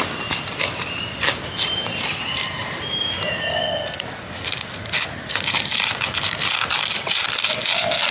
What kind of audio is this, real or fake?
real